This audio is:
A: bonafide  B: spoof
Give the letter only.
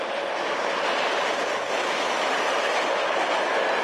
A